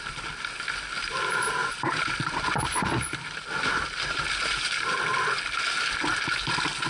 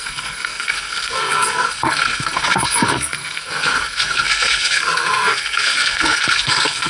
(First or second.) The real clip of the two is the first